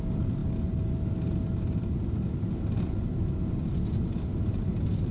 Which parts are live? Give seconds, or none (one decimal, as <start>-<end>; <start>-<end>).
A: 0.0-5.1